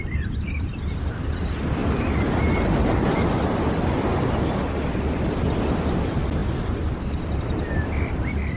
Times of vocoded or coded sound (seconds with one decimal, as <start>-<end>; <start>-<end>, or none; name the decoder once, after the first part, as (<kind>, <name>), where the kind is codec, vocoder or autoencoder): 0.0-4.1 (vocoder, BigVGAN v2); 5.8-8.6